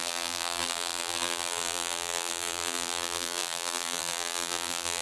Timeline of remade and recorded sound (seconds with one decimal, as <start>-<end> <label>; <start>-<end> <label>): 0.0-5.0 remade